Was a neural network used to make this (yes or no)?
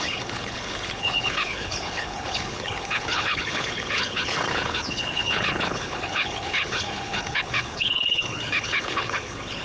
yes